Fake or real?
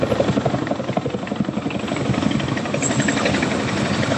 real